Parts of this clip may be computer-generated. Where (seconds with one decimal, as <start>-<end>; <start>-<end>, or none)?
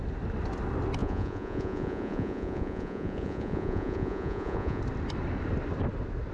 1.0-4.8